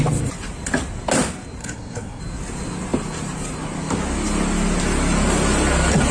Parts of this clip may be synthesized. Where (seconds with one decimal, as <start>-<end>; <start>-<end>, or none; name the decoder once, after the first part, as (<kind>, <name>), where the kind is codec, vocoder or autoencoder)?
1.6-2.2 (codec, SNAC)